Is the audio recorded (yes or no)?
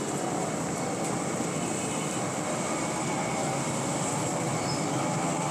no